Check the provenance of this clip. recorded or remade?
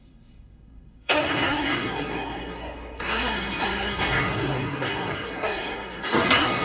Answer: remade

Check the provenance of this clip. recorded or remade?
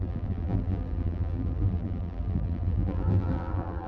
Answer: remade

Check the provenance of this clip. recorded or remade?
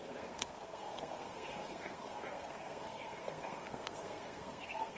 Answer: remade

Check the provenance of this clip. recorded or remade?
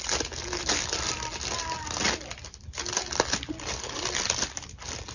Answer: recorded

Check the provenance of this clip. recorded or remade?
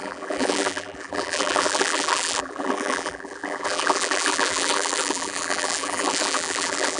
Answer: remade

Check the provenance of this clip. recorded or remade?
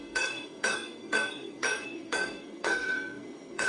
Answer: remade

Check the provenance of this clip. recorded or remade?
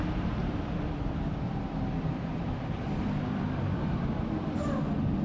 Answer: remade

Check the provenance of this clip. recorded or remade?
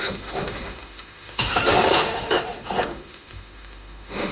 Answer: remade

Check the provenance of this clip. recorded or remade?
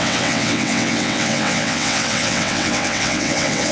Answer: remade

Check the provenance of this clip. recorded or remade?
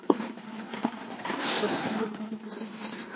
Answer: remade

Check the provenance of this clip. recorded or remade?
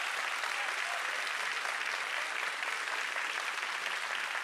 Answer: recorded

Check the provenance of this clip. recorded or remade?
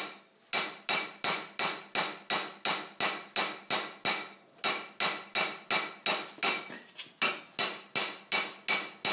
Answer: recorded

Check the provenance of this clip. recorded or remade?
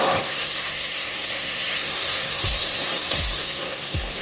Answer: remade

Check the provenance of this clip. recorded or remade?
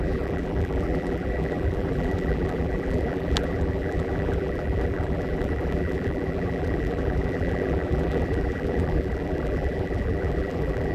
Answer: remade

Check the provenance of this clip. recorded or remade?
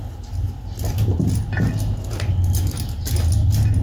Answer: recorded